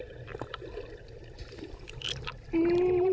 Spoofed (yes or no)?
no